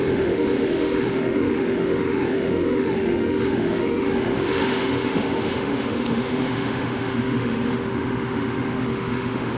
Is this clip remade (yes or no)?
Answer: yes